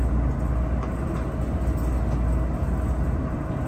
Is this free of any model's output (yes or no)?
yes